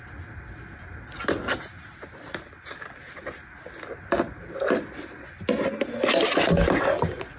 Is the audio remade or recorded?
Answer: recorded